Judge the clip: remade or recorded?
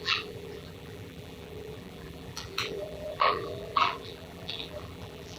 remade